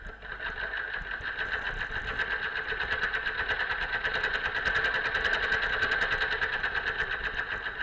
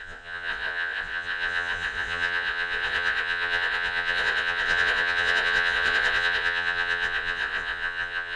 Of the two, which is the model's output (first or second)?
second